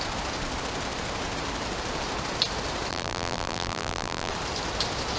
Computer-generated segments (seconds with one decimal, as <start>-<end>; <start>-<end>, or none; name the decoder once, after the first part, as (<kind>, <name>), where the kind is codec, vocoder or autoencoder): 2.9-4.3 (vocoder, BigVGAN v2)